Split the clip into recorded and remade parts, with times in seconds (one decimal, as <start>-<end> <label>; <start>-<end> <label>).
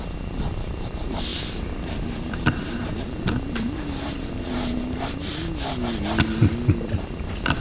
0.0-5.2 remade; 5.2-7.0 recorded; 7.0-7.6 remade